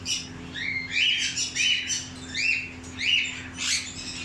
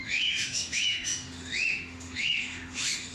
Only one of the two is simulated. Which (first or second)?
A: second